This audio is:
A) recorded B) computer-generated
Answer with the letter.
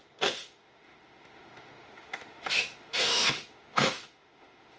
B